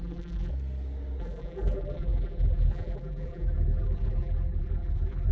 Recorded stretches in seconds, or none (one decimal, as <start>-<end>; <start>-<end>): 0.5-1.2

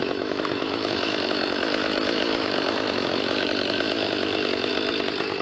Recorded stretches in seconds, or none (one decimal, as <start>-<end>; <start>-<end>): 4.7-5.4

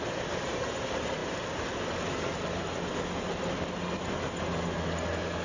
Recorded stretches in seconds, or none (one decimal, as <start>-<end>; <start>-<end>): 0.0-5.4

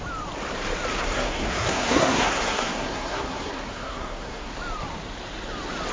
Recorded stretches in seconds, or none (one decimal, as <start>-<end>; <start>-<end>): 0.0-1.0; 4.5-5.9

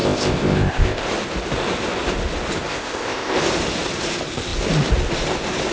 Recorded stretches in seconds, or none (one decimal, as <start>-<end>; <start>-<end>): 1.0-2.7; 3.4-5.7

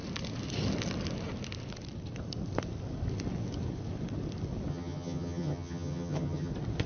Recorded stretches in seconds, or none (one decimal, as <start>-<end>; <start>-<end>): 0.0-4.7; 6.5-6.9

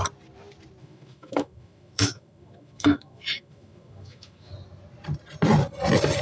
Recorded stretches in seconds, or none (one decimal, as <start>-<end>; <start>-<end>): 0.0-0.8; 4.5-6.2